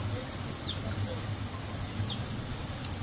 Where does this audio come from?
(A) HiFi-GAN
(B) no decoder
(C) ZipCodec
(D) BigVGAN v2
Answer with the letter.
B